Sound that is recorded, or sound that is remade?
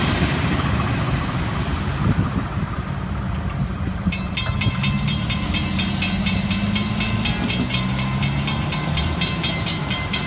recorded